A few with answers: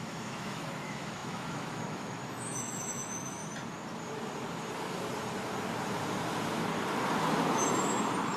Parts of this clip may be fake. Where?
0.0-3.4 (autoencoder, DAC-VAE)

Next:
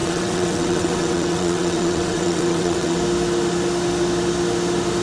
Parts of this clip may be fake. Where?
0.0-3.0 (vocoder, WaveNeXt)